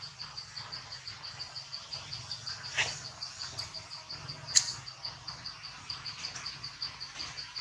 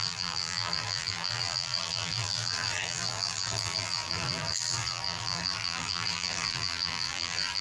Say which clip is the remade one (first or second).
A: second